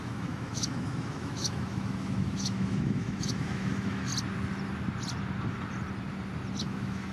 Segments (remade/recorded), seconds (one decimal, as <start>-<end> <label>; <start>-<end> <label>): 0.0-4.1 remade; 4.1-6.6 recorded; 6.6-7.1 remade